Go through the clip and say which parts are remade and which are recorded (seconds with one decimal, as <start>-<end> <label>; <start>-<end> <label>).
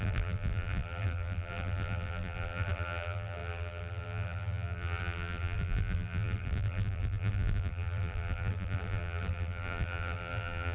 0.0-10.7 remade